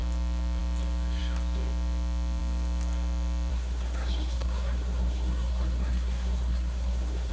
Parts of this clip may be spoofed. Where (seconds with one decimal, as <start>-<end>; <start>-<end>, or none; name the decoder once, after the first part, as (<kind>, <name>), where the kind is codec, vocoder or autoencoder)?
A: 3.5-7.3 (codec, SNAC)